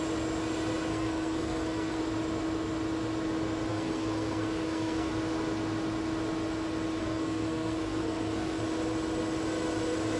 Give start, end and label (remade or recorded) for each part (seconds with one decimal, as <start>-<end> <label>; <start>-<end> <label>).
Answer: 0.0-0.9 recorded; 0.9-2.0 remade; 2.0-3.7 recorded; 3.7-5.1 remade; 5.1-7.0 recorded; 7.0-8.6 remade; 8.6-10.2 recorded